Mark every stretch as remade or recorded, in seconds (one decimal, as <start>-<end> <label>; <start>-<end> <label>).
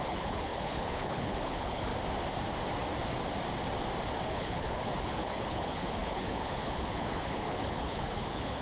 0.0-1.9 remade; 1.9-4.3 recorded; 4.3-8.6 remade